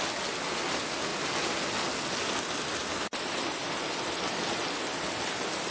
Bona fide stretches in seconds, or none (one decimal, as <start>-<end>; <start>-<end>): 0.0-5.7